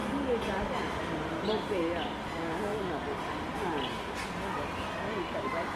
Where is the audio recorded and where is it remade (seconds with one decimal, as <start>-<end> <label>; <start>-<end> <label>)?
0.0-2.7 recorded; 2.7-3.3 remade; 3.3-5.8 recorded